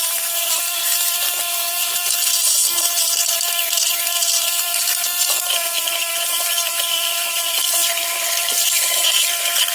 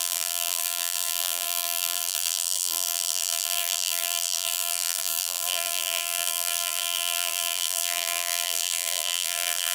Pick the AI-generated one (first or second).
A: second